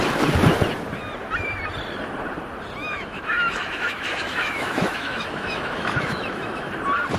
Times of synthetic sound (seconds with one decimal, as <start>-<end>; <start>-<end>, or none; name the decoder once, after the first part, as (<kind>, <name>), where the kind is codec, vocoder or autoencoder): 2.8-6.7 (autoencoder, DAC-VAE)